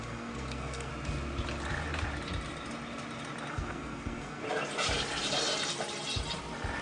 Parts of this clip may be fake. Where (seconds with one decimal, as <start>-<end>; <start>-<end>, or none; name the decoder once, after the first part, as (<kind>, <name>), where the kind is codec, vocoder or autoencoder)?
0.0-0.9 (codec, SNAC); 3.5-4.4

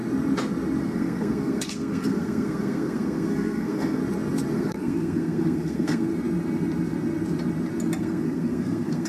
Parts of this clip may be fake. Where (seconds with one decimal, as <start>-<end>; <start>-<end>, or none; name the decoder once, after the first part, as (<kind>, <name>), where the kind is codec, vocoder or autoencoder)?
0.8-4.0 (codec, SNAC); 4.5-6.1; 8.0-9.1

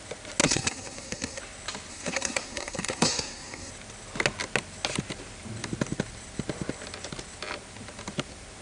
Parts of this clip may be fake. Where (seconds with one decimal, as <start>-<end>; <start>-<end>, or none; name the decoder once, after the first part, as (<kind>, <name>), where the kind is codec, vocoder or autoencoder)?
0.4-1.4 (codec, SNAC); 1.9-3.7